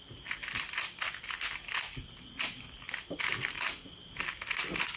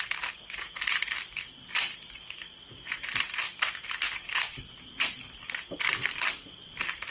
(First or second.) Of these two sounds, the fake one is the second